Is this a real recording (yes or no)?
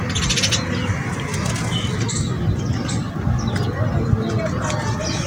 yes